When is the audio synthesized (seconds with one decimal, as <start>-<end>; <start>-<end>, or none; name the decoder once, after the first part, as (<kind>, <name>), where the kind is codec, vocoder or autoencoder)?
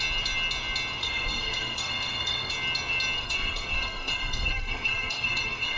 1.0-2.5 (codec, SNAC); 3.2-5.8